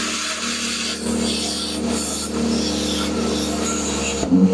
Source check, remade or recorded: recorded